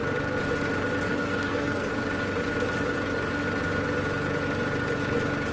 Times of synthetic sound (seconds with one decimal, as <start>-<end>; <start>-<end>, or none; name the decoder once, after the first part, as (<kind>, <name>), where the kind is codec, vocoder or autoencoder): 1.1-1.9 (codec, SNAC)